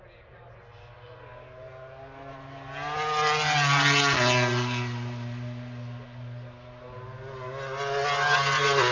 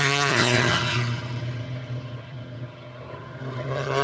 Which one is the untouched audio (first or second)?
first